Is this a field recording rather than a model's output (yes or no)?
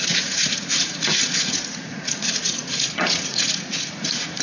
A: no